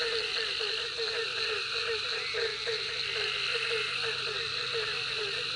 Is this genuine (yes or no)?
yes